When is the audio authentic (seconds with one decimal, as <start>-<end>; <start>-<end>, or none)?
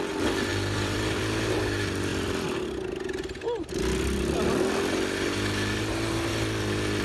0.0-0.5; 1.2-7.0